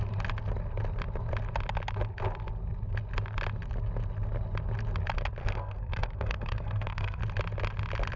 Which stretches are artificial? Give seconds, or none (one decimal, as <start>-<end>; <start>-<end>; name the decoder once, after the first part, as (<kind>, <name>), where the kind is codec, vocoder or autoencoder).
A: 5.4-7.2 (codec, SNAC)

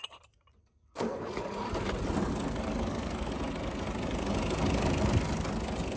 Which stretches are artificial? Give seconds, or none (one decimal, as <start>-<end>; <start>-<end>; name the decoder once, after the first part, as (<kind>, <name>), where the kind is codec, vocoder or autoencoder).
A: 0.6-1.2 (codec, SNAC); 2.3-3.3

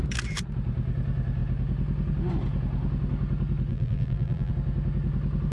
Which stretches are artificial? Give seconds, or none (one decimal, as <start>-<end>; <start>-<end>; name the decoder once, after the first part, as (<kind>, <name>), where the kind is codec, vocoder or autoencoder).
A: 3.7-4.5 (vocoder, BigVGAN v2)